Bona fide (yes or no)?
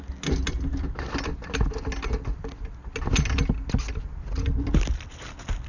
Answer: yes